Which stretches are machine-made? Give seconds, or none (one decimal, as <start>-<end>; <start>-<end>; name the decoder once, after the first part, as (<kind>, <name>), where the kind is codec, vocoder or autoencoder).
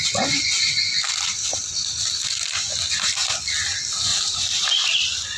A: 4.1-4.7 (vocoder, BigVGAN v2)